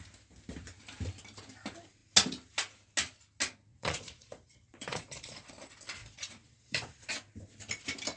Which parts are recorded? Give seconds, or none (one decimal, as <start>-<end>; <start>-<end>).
0.0-3.7; 5.5-6.0; 7.1-8.2